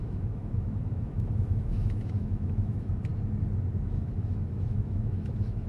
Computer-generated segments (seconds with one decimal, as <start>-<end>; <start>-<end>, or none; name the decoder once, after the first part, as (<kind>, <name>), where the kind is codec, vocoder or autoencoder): 0.0-3.1 (autoencoder, DAC-VAE); 3.8-5.7